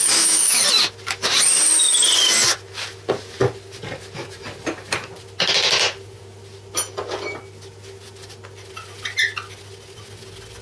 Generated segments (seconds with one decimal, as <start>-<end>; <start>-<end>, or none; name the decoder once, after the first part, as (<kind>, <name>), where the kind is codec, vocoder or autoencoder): 0.0-0.6 (autoencoder, DAC-VAE)